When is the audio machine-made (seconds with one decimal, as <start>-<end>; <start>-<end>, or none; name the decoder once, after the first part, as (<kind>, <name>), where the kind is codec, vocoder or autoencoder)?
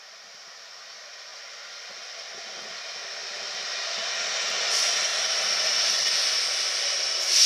none